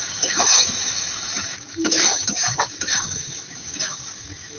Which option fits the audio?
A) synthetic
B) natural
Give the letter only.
A